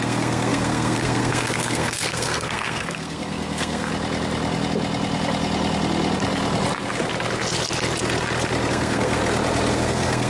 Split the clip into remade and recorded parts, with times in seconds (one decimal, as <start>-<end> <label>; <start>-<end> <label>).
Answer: 0.0-3.9 remade; 3.9-8.7 recorded; 8.7-9.2 remade; 9.2-9.7 recorded; 9.7-10.3 remade